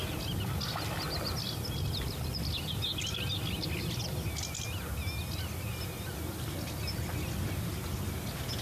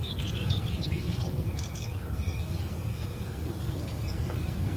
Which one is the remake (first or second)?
second